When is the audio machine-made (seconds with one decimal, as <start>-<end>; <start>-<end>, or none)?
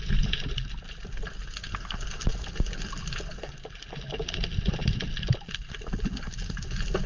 none